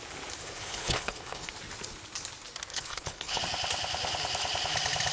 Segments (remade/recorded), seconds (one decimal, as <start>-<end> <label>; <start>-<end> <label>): 0.0-0.4 recorded; 0.4-1.5 remade; 1.5-2.7 recorded; 2.7-3.4 remade; 3.4-5.1 recorded